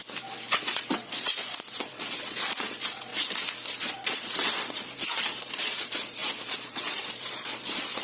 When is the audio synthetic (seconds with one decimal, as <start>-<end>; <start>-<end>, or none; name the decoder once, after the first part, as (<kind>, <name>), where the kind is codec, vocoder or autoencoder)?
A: 0.5-3.1 (vocoder, Vocos); 3.8-8.0